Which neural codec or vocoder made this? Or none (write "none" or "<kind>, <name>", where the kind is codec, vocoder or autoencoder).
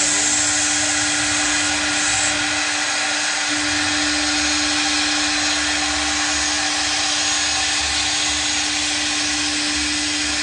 none